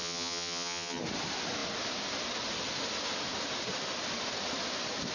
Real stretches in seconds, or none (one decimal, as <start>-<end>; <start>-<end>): 1.0-5.1